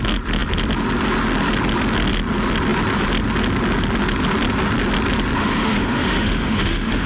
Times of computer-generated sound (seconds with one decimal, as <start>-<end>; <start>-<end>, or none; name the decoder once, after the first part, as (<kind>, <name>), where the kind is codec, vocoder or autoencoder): 5.4-7.1 (autoencoder, DAC-VAE)